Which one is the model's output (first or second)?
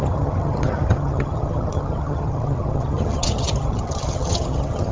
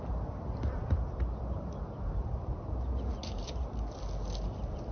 first